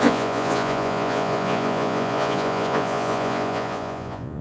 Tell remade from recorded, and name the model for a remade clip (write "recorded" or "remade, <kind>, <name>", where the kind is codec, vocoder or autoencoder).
remade, vocoder, Vocos